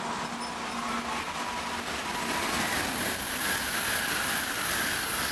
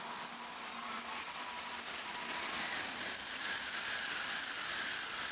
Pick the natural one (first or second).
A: first